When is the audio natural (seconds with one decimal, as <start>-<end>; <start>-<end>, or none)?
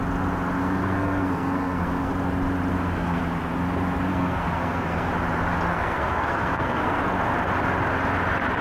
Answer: 0.0-0.6; 2.1-2.7; 3.2-4.1; 5.1-5.7; 7.0-8.6